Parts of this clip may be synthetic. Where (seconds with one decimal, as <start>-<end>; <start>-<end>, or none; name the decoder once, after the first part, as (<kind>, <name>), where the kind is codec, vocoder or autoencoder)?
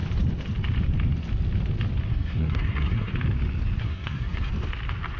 2.1-3.1 (codec, SNAC); 3.8-4.5